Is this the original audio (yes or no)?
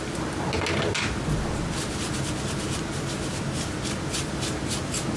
yes